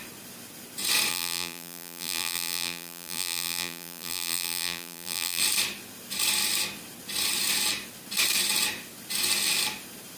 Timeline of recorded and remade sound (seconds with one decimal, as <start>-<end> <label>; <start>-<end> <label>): 0.0-1.1 recorded; 1.1-5.4 remade; 5.4-10.2 recorded